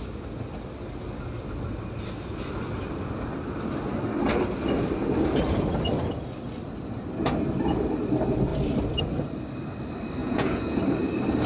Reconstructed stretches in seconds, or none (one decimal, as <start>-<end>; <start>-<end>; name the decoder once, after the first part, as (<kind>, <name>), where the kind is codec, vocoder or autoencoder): 10.2-10.8 (vocoder, Vocos)